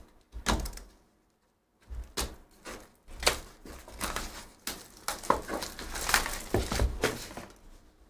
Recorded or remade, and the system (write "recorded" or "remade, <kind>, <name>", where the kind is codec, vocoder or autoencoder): recorded